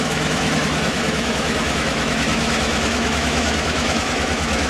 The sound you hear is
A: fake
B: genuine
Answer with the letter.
A